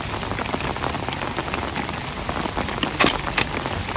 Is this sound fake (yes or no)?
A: no